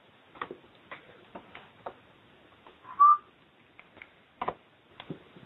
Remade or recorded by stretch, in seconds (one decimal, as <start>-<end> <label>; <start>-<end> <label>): 0.0-5.5 recorded